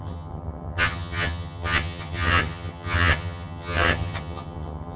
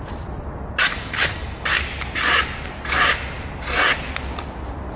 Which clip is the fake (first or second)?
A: first